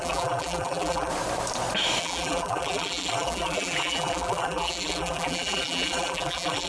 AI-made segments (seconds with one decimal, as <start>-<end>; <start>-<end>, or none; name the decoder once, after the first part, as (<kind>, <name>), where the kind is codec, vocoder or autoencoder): 0.0-1.1 (vocoder, BigVGAN v2); 2.0-6.7